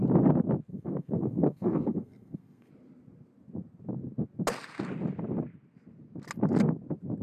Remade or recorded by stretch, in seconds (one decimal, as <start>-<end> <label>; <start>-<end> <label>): 0.0-0.7 recorded; 0.7-2.7 remade; 2.7-7.2 recorded